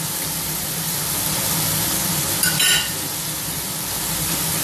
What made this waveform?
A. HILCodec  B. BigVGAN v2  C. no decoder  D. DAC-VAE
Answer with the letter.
C